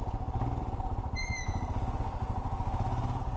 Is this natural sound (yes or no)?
yes